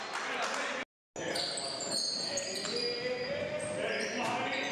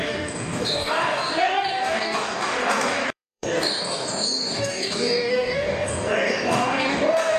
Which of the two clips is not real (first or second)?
second